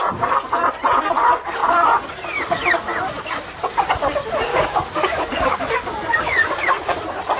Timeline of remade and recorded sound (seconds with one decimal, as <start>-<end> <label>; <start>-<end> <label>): 0.0-4.5 recorded; 4.5-6.5 remade; 6.5-7.4 recorded